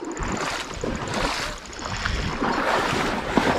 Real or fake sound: real